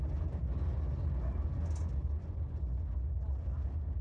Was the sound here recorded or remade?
recorded